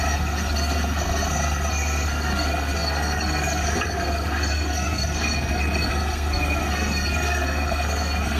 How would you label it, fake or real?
fake